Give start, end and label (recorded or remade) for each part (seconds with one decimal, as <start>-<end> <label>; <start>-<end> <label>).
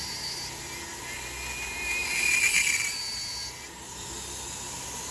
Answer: 0.0-5.1 recorded